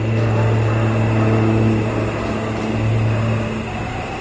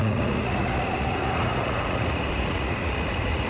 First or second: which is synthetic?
second